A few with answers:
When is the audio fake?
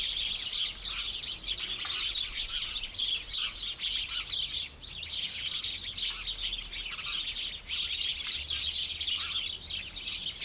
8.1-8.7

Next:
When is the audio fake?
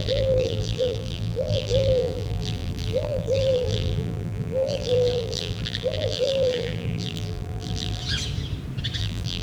0.0-8.0; 9.0-9.4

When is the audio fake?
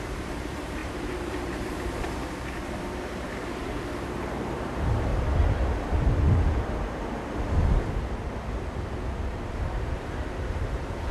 0.0-5.1; 9.6-11.1